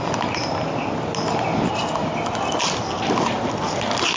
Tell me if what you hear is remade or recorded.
recorded